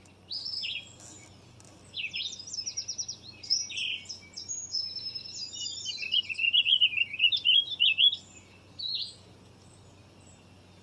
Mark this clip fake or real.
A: real